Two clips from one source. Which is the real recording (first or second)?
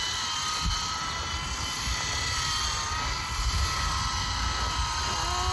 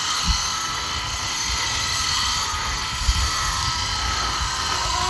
first